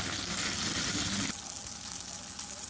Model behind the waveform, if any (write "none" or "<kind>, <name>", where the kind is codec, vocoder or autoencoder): none